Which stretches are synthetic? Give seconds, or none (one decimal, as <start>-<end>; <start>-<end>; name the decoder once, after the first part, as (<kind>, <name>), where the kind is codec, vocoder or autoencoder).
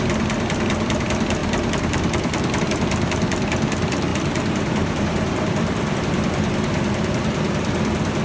1.4-2.6 (vocoder, BigVGAN v2); 4.1-6.0